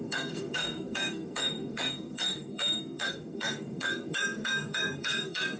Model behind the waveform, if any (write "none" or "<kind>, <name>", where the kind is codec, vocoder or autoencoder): codec, SNAC